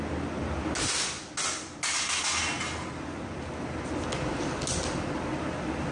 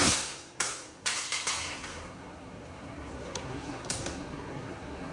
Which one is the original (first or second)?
first